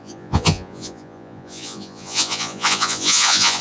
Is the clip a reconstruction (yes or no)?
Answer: yes